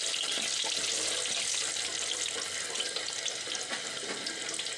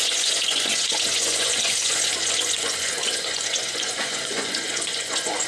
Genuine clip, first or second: first